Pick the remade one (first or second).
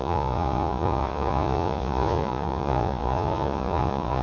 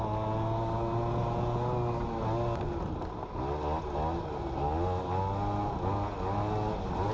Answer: first